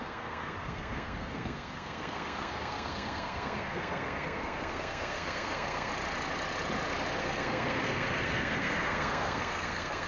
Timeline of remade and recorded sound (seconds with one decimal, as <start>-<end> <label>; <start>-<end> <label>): 0.0-5.9 remade; 5.9-7.2 recorded; 7.2-10.1 remade